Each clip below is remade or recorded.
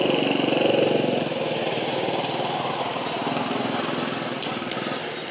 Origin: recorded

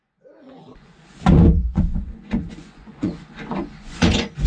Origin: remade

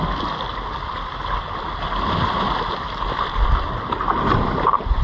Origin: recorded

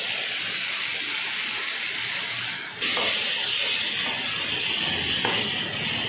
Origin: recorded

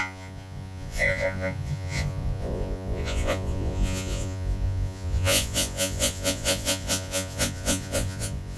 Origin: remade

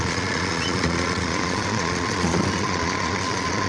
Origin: remade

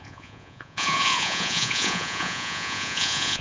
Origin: remade